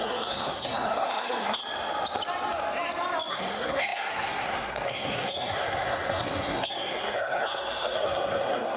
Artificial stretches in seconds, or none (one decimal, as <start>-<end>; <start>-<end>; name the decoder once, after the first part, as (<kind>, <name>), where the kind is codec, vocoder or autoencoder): 0.0-1.6 (codec, SNAC); 3.3-8.8